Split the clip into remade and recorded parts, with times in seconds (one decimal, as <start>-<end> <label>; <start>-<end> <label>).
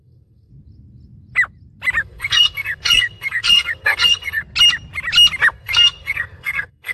0.0-0.5 remade; 0.5-2.0 recorded; 2.0-4.4 remade; 4.4-5.5 recorded; 5.5-6.9 remade